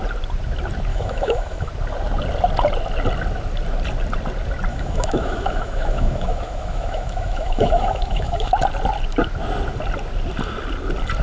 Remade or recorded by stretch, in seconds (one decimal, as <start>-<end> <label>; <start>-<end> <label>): 0.0-0.9 recorded; 0.9-1.7 remade; 1.7-4.7 recorded; 4.7-8.5 remade; 8.5-11.2 recorded